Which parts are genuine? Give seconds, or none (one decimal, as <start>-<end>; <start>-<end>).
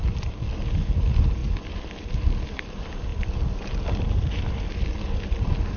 0.0-5.8